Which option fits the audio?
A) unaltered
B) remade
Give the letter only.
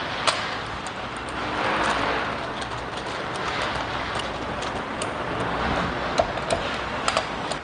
A